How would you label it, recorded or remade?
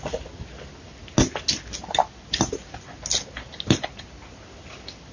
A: recorded